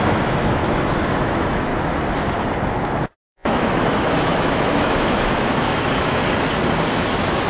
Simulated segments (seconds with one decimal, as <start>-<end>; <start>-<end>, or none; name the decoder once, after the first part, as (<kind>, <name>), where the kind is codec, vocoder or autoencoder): 0.0-0.6 (autoencoder, DAC-VAE); 1.1-1.7; 2.8-6.2; 7.0-7.5